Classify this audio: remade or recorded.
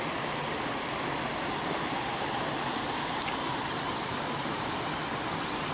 recorded